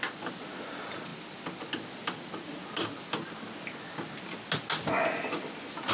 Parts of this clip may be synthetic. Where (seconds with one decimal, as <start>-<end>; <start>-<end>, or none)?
none